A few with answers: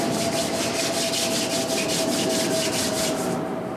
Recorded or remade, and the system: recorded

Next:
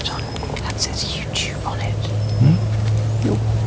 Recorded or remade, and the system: recorded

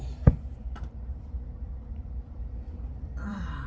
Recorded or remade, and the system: remade, vocoder, BigVGAN v2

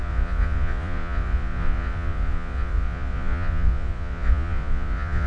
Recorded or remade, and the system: remade, vocoder, Vocos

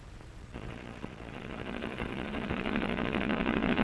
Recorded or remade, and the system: remade, vocoder, Vocos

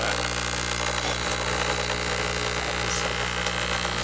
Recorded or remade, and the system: recorded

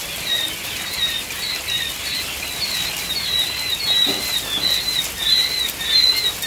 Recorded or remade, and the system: recorded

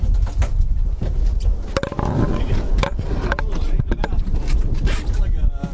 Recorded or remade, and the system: recorded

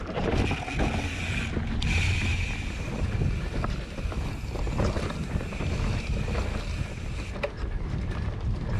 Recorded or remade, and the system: recorded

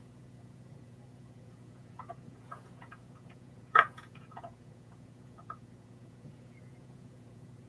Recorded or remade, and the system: remade, vocoder, Vocos